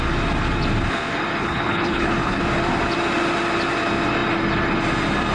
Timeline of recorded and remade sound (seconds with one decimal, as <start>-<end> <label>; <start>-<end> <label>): 0.0-1.4 recorded; 1.4-2.4 remade; 2.4-5.3 recorded